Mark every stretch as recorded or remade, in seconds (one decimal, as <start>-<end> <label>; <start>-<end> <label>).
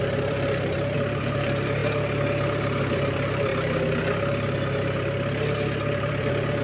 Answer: 0.0-1.8 remade; 1.8-2.9 recorded; 2.9-3.5 remade; 3.5-5.9 recorded; 5.9-6.6 remade